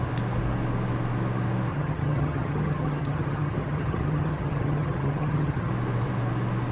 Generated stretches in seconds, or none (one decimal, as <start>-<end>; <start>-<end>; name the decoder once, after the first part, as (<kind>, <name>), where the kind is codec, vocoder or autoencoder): 1.7-5.7 (vocoder, HiFi-GAN)